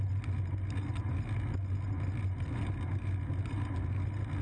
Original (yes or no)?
yes